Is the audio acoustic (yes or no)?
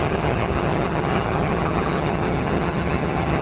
no